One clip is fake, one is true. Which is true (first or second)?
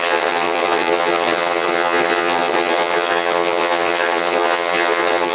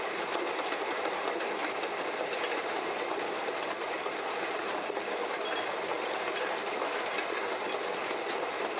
second